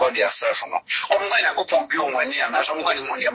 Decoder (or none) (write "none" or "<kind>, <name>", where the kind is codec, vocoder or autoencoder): codec, SNAC